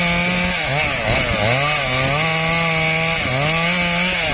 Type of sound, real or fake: real